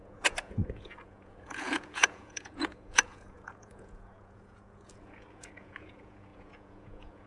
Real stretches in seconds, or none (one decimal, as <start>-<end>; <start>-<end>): none